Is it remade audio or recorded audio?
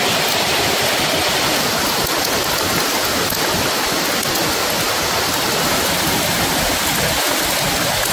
recorded